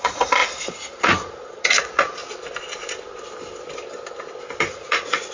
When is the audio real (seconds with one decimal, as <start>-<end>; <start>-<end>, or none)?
2.2-4.7